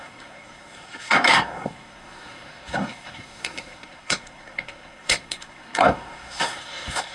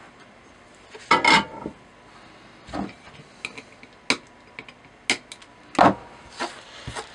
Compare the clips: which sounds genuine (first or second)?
second